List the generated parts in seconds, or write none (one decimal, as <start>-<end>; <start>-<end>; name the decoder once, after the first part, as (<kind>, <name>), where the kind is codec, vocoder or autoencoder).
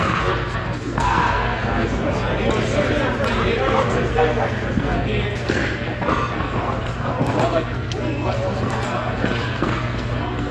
0.0-2.3 (codec, SNAC); 3.8-10.5